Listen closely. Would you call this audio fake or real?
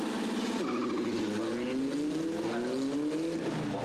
real